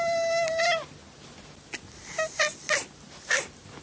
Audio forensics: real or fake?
real